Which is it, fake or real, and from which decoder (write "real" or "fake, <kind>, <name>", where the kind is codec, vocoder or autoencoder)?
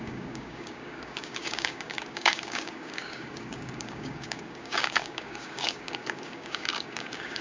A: fake, codec, DAC